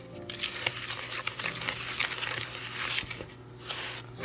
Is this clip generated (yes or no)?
no